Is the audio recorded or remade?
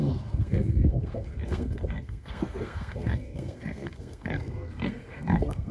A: remade